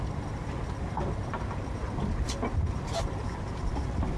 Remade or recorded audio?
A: recorded